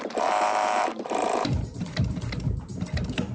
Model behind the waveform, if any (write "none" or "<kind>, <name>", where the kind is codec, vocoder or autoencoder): vocoder, BigVGAN v2